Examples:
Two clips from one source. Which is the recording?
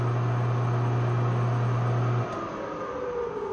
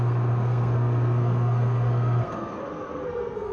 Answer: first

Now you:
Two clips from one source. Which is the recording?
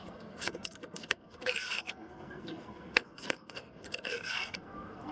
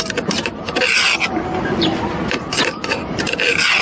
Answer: second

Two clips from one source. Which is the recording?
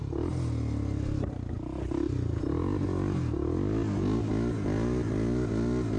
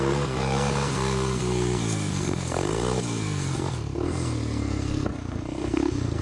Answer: first